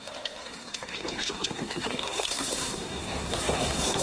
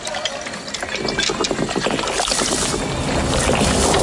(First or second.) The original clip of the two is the second